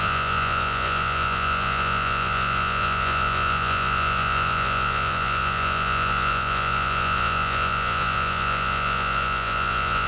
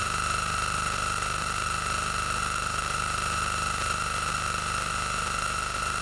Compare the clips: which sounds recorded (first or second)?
second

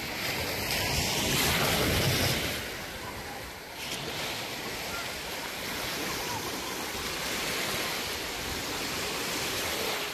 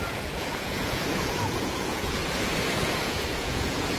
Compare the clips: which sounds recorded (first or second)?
first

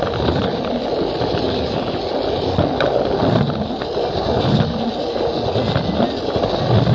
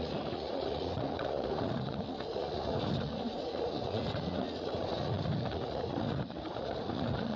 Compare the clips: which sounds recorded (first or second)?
first